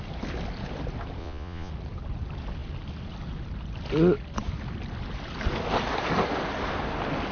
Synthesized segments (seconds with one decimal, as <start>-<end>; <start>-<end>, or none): 1.2-1.7